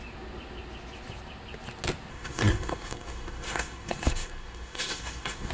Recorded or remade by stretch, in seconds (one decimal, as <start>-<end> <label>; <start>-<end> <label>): 0.0-2.1 recorded; 2.1-5.5 remade